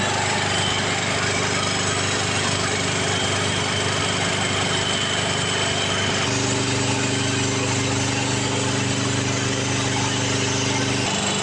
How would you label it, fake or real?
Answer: real